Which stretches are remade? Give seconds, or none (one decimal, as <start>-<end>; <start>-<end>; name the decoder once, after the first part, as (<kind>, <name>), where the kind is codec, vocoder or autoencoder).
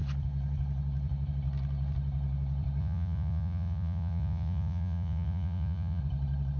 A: 2.8-6.0 (vocoder, Vocos)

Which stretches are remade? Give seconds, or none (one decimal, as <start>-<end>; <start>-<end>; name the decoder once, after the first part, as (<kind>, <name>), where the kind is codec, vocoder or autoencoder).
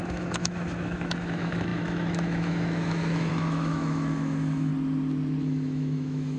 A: 0.0-4.7 (autoencoder, DAC-VAE); 5.4-6.4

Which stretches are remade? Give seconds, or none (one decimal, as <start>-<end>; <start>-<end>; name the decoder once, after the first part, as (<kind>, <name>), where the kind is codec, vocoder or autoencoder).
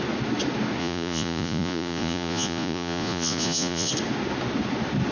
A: 0.8-3.9 (vocoder, Vocos)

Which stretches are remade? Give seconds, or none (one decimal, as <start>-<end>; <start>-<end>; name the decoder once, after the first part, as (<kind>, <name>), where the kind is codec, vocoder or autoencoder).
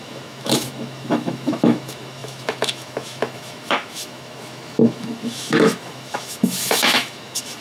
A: 0.0-7.6 (autoencoder, DAC-VAE)